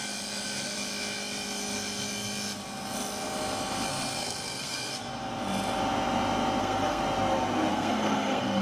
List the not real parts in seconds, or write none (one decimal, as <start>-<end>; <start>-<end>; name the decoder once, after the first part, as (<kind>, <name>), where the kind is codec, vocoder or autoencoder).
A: 3.9-4.9 (codec, SNAC); 6.6-7.0; 7.7-8.6